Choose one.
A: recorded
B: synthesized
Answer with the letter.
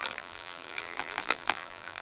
B